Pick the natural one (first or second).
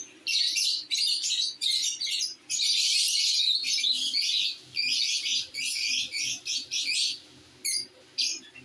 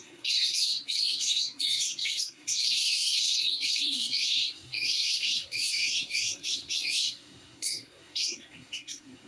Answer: first